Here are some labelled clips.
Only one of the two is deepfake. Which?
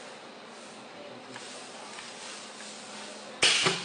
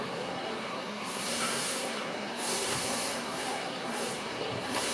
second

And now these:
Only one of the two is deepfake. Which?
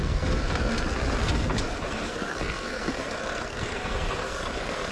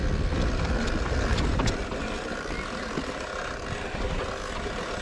first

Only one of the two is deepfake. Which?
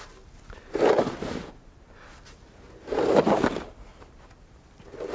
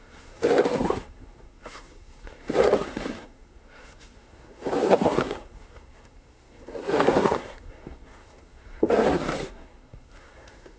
second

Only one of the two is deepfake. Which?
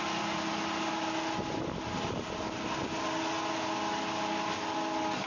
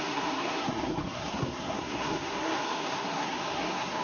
second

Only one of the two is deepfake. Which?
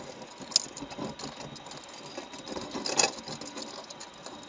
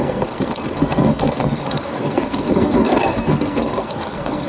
second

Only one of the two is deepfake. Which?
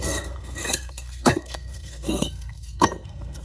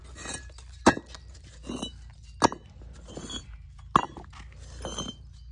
first